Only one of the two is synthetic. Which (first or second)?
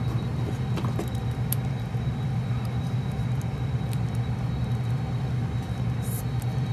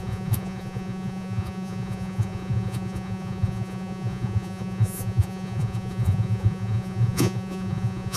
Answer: second